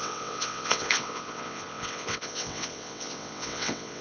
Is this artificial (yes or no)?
yes